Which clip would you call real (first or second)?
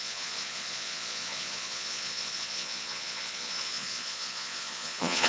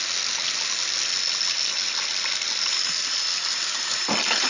second